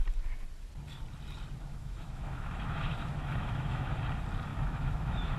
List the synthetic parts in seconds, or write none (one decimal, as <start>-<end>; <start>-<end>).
1.7-4.0; 4.5-5.4